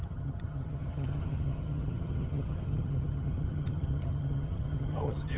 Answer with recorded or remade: remade